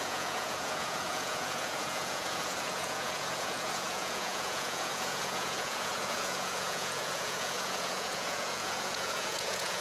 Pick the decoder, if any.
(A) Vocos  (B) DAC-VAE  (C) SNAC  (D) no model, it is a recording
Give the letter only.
A